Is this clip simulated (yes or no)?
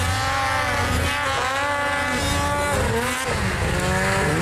no